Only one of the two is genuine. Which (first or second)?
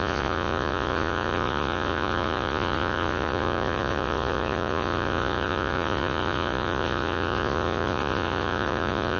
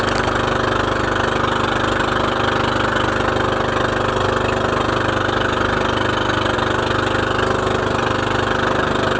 second